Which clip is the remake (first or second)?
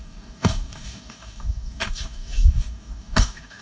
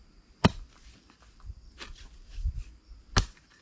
first